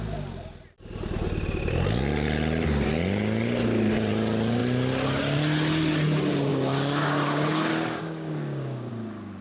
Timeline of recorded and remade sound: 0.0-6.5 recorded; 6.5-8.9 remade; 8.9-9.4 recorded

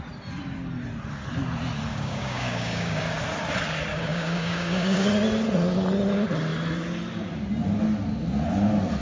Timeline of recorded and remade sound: 0.0-1.9 recorded; 1.9-3.0 remade; 3.0-3.9 recorded; 3.9-5.1 remade; 5.1-9.0 recorded

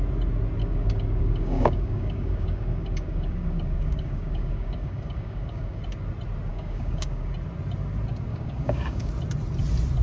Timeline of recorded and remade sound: 0.0-0.6 recorded; 0.6-5.8 remade; 5.8-6.5 recorded; 6.5-7.3 remade; 7.3-8.3 recorded; 8.3-9.1 remade; 9.1-10.0 recorded

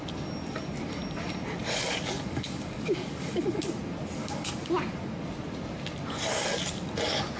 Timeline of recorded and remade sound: 0.0-1.6 recorded; 1.6-3.8 remade; 3.8-4.2 recorded; 4.2-4.7 remade; 4.7-7.4 recorded

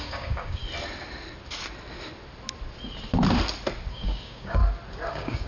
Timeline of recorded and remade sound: 0.0-0.6 remade; 0.6-3.9 recorded; 3.9-4.6 remade; 4.6-5.1 recorded; 5.1-5.5 remade

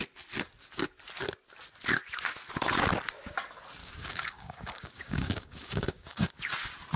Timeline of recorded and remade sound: 0.0-3.8 recorded; 3.8-6.3 remade; 6.3-7.0 recorded

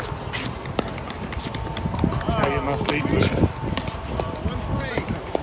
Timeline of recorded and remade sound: 0.0-5.4 recorded